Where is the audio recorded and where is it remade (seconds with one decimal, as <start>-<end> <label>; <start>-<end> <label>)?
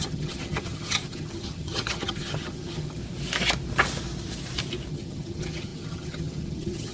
0.0-3.0 remade; 3.0-4.9 recorded; 4.9-6.9 remade